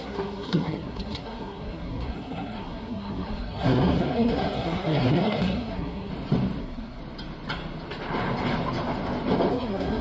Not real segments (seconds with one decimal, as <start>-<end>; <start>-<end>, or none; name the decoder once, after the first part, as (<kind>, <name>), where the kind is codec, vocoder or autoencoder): 0.0-6.1 (codec, SNAC); 6.6-7.0; 9.5-10.0